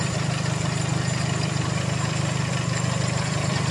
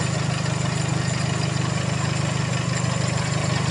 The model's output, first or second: first